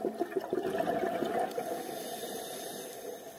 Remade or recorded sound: recorded